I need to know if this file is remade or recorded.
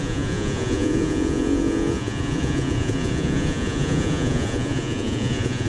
remade